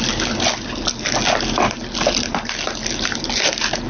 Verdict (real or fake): real